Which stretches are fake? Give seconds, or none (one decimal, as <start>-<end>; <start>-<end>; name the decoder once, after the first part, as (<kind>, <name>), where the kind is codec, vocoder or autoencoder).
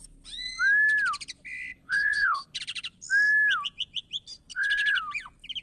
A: 1.7-2.6 (codec, HILCodec); 4.5-5.0